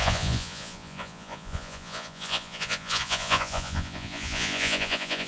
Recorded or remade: remade